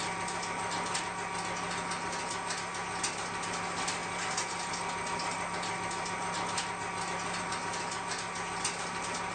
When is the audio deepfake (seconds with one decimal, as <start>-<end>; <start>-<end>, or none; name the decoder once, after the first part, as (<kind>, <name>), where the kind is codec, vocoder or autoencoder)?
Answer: none